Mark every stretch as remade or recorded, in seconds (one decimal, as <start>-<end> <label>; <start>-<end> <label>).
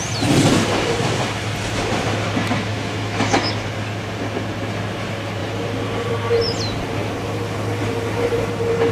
0.0-2.7 recorded; 2.7-3.5 remade; 3.5-8.9 recorded